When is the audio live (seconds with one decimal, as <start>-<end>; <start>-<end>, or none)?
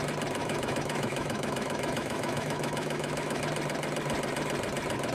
0.0-0.4; 3.4-5.1